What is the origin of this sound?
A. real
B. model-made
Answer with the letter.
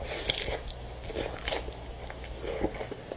A